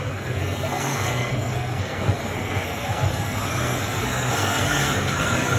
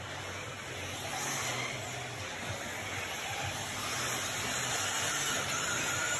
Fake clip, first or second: first